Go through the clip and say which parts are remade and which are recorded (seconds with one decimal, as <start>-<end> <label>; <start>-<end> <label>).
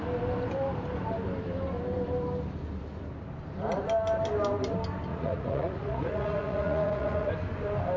0.0-5.1 recorded; 5.1-7.3 remade; 7.3-8.0 recorded